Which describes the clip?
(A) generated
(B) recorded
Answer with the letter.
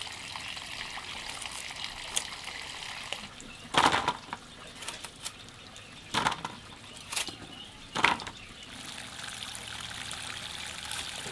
B